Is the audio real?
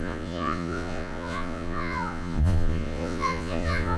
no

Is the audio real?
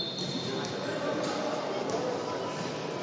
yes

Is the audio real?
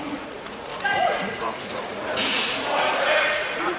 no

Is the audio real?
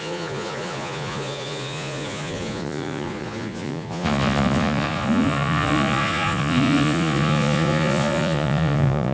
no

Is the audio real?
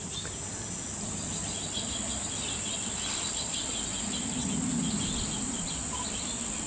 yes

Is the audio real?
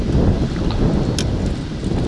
yes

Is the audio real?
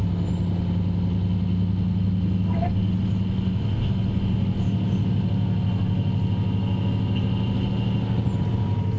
yes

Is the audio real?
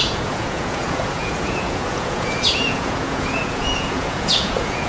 no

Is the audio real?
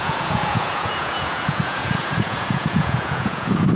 no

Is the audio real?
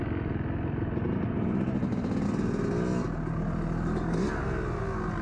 yes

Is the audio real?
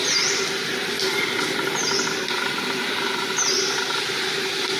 yes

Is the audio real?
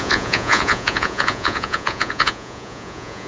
no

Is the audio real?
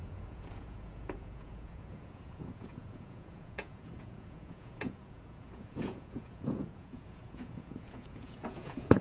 no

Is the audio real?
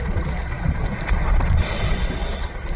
no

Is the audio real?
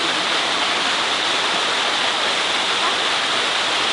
yes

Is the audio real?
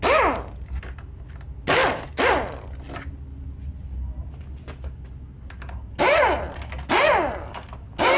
yes